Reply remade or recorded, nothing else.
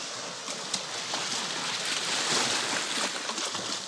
recorded